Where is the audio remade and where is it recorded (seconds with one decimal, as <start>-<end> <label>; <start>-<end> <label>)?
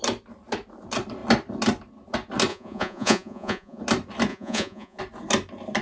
0.0-2.5 recorded; 2.5-3.8 remade; 3.8-4.3 recorded; 4.3-5.0 remade; 5.0-5.8 recorded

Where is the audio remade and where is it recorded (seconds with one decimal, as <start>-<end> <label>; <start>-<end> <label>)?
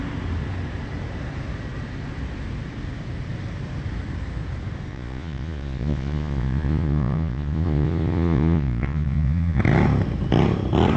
0.0-4.9 recorded; 4.9-9.6 remade; 9.6-11.0 recorded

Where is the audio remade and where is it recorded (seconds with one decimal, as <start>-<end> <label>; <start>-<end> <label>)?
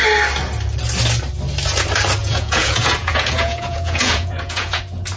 0.0-2.2 recorded; 2.2-4.8 remade; 4.8-5.2 recorded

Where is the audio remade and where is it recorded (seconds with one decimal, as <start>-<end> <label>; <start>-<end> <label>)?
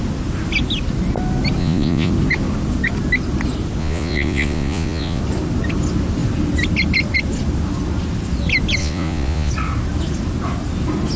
0.0-1.6 recorded; 1.6-2.1 remade; 2.1-3.8 recorded; 3.8-5.2 remade; 5.2-8.8 recorded; 8.8-9.5 remade; 9.5-11.2 recorded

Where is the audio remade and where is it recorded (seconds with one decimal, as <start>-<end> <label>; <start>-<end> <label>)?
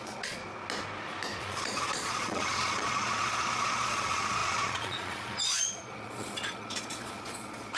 0.0-0.4 remade; 0.4-1.4 recorded; 1.4-7.8 remade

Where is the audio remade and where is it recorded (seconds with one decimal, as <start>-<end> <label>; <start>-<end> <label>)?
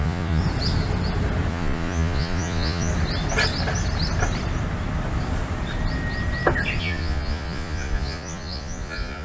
0.0-0.4 remade; 0.4-1.5 recorded; 1.5-2.9 remade; 2.9-6.8 recorded; 6.8-9.2 remade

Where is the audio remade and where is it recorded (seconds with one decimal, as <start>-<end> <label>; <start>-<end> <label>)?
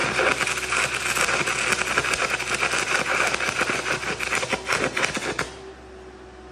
0.0-6.5 recorded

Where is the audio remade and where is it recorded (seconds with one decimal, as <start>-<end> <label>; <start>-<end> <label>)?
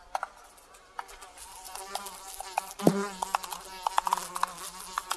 0.0-5.2 recorded